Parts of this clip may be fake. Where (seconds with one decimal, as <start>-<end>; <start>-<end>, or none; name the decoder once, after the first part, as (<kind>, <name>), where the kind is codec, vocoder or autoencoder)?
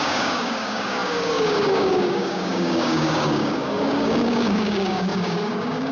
0.0-5.9 (codec, DAC)